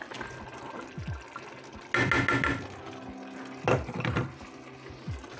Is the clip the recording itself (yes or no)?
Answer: yes